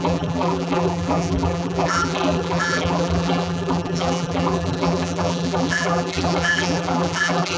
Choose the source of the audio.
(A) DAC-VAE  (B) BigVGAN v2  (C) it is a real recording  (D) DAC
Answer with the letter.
B